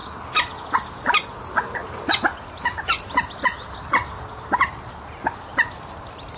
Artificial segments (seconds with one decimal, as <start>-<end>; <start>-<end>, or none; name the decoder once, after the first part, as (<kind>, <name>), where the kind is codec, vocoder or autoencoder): 0.0-0.7 (vocoder, BigVGAN v2); 1.8-4.7; 5.5-6.4